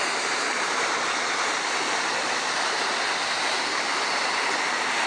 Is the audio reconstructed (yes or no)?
yes